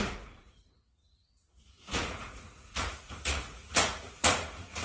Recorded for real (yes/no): no